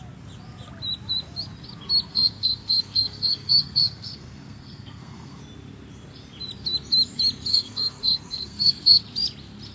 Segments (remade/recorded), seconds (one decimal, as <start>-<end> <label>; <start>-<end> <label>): 0.0-2.1 recorded; 2.1-5.4 remade; 5.4-7.5 recorded; 7.5-9.0 remade; 9.0-9.7 recorded